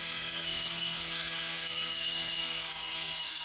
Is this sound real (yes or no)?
no